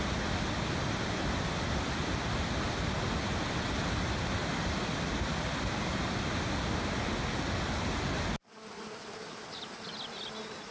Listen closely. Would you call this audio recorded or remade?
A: recorded